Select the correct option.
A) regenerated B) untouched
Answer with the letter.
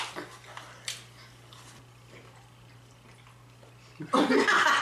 B